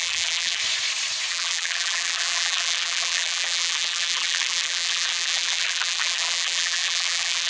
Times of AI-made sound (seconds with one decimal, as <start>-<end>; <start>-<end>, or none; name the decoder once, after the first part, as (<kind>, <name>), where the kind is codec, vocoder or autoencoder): 0.0-0.6 (vocoder, BigVGAN v2); 1.3-7.5